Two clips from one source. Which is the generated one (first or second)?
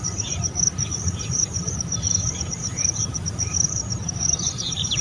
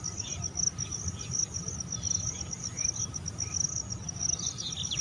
first